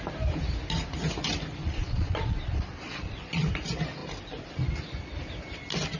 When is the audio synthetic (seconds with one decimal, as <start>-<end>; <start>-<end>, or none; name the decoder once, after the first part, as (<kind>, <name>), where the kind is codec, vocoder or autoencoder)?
1.6-3.5 (vocoder, Vocos)